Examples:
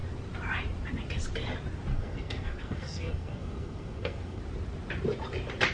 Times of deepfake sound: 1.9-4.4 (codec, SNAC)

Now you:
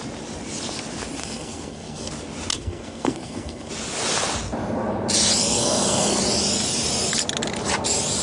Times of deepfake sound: 1.2-2.1 (codec, SNAC); 2.5-3.7; 5.4-6.2

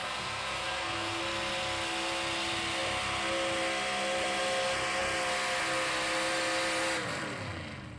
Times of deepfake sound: 0.0-1.2 (codec, SNAC)

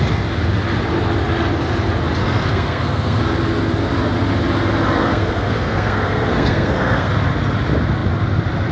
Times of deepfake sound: 2.2-3.2 (codec, SNAC); 5.0-7.1

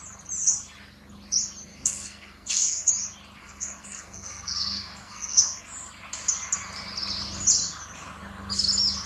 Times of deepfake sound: 1.7-2.9 (codec, SNAC); 3.4-5.6

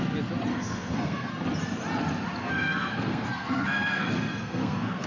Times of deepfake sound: 0.5-1.3 (codec, SNAC); 2.4-5.1

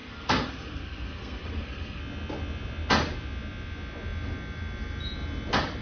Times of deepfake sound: 0.0-2.0 (codec, SNAC)